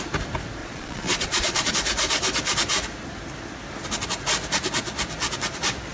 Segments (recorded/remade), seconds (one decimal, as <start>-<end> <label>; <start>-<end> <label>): 0.0-0.6 recorded; 0.6-1.7 remade; 1.7-5.9 recorded